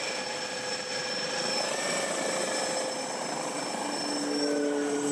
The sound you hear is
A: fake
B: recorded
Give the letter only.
B